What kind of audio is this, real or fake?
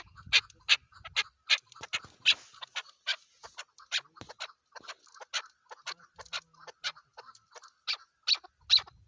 real